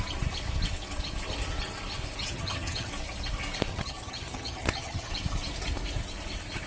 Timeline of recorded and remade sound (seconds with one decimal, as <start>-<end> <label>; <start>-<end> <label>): 0.0-2.2 recorded; 2.2-2.9 remade; 2.9-3.7 recorded; 3.7-5.1 remade; 5.1-6.7 recorded